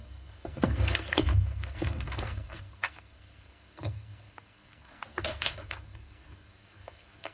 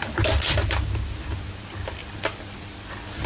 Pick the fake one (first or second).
first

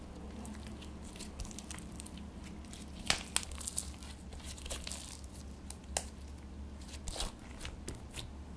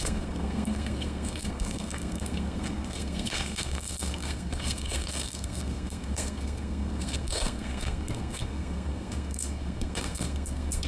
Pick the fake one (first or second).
second